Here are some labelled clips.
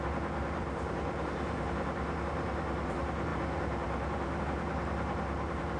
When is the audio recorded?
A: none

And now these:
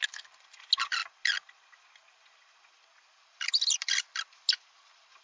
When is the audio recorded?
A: 0.0-5.2